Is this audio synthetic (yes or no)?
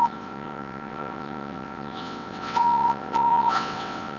yes